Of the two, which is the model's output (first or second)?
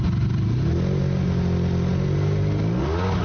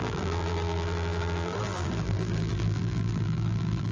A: second